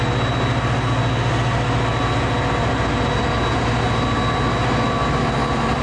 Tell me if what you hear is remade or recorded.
recorded